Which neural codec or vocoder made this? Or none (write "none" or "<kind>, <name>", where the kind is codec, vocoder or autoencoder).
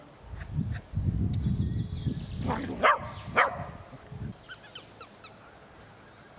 none